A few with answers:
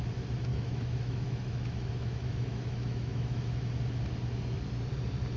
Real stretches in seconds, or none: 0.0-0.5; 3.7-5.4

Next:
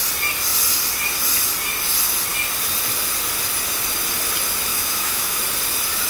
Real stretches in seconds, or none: 0.0-4.7; 5.4-6.1

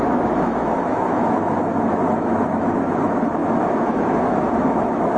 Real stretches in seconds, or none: none